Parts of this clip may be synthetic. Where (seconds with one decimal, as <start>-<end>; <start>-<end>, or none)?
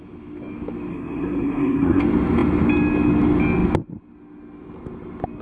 0.9-2.0